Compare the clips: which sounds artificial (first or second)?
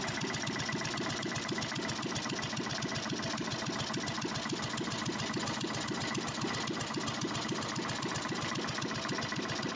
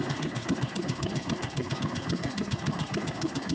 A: second